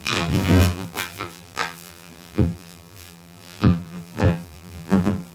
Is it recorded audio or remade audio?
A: remade